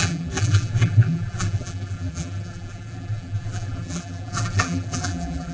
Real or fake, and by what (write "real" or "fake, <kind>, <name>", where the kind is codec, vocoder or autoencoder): fake, vocoder, BigVGAN v2